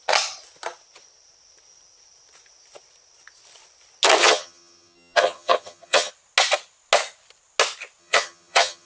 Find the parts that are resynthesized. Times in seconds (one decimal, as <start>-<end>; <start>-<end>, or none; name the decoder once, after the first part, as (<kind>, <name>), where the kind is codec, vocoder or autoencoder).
4.2-6.1 (vocoder, HiFi-GAN); 8.0-8.9